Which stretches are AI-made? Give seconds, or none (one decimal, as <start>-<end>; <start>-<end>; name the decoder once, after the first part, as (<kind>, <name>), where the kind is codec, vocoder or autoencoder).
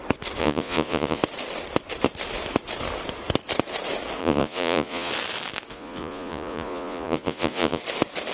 0.4-1.2 (vocoder, Vocos); 4.2-5.1; 5.7-7.8